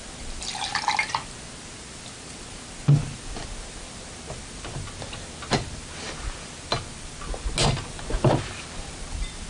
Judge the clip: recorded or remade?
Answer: recorded